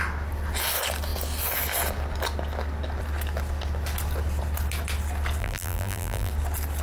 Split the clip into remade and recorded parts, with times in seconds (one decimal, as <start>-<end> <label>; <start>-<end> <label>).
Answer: 0.0-5.4 recorded; 5.4-6.3 remade; 6.3-6.8 recorded